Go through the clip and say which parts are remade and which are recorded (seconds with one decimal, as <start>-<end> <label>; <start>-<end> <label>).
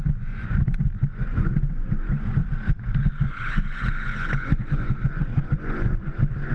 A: 0.0-6.5 remade